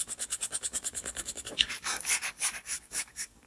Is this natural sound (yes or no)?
no